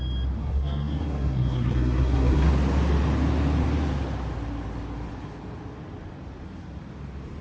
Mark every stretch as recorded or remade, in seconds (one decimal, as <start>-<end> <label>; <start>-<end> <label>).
0.0-0.4 recorded; 0.4-2.5 remade; 2.5-7.4 recorded